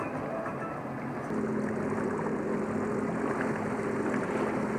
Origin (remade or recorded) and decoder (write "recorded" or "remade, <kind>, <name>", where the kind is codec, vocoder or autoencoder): recorded